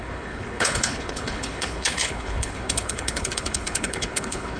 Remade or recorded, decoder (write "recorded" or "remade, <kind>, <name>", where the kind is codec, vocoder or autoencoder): remade, codec, HILCodec